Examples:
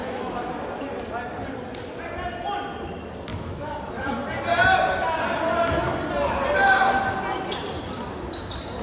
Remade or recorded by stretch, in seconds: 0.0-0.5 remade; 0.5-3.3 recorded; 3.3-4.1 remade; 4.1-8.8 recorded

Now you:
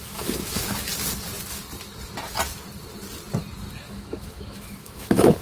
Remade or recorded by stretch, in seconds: 0.0-0.9 remade; 0.9-3.8 recorded; 3.8-5.4 remade

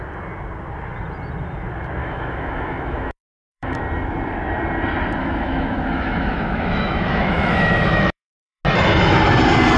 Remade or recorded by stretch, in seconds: 0.0-2.0 recorded; 2.0-3.8 remade; 3.8-5.2 recorded; 5.2-8.6 remade; 8.6-9.8 recorded

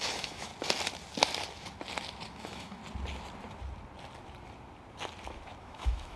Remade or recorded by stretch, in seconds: 0.0-0.5 remade; 0.5-2.3 recorded; 2.3-2.8 remade; 2.8-5.6 recorded; 5.6-6.2 remade